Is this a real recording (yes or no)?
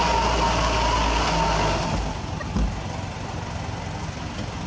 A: yes